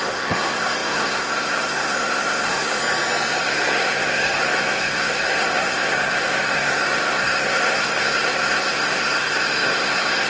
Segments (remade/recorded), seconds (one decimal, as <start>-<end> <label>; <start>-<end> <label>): 0.0-2.8 remade; 2.8-3.4 recorded; 3.4-10.3 remade